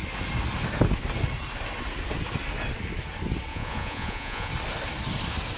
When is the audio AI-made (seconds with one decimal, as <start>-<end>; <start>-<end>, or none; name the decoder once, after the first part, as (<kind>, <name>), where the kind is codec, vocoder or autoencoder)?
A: 3.5-4.5 (vocoder, Vocos)